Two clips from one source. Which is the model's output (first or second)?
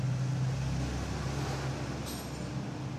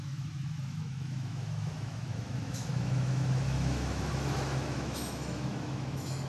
second